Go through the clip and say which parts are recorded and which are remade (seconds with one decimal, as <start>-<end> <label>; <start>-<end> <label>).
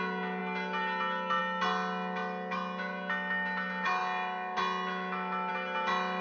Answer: 0.0-6.2 recorded